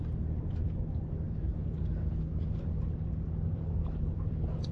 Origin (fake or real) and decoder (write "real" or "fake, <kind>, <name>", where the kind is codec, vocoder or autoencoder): real